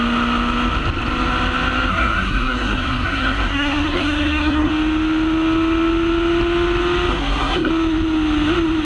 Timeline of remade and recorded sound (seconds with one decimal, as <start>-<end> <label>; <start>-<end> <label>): 0.0-1.9 recorded; 1.9-4.7 remade; 4.7-7.1 recorded; 7.1-7.7 remade; 7.7-8.8 recorded